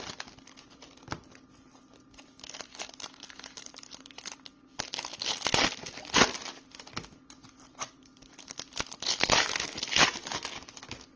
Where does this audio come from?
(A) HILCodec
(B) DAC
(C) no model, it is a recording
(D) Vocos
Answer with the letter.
C